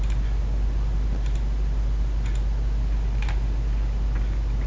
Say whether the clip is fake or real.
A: real